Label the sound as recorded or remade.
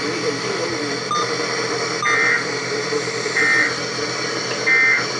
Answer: recorded